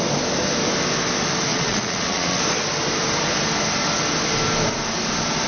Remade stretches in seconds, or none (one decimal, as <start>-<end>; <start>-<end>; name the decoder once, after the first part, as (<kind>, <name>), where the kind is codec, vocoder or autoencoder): 1.5-2.4 (vocoder, Vocos)